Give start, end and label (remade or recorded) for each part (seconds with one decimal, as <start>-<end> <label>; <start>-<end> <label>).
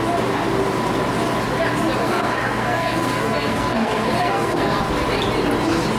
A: 0.0-2.0 recorded; 2.0-4.8 remade; 4.8-6.0 recorded